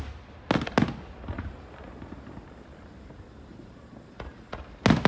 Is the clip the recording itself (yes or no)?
yes